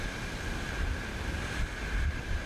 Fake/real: real